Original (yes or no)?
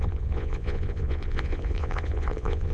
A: no